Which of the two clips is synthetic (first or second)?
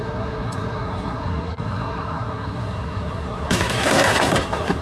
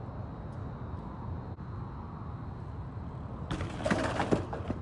first